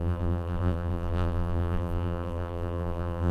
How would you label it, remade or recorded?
remade